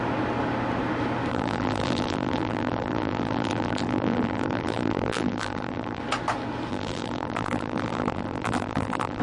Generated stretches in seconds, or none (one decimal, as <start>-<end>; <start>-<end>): 1.3-6.0; 6.7-9.2